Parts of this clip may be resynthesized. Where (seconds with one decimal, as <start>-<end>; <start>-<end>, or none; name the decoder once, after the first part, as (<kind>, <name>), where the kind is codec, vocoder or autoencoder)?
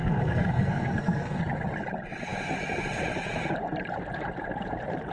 0.0-1.4 (codec, SNAC)